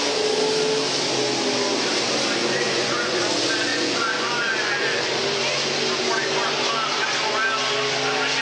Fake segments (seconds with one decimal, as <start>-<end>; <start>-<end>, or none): 2.4-3.2; 3.7-5.0